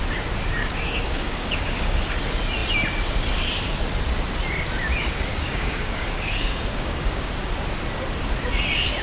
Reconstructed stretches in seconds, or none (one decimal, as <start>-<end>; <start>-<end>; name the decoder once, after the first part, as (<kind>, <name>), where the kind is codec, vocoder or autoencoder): 0.6-2.0 (codec, DAC); 5.3-7.3